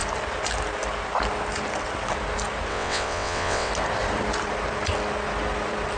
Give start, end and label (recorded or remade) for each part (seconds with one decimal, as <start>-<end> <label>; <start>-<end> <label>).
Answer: 0.0-2.7 recorded; 2.7-3.7 remade; 3.7-6.0 recorded